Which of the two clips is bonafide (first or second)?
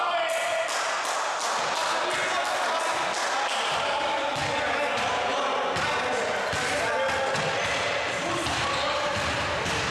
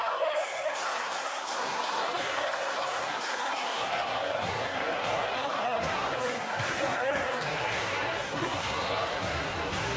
first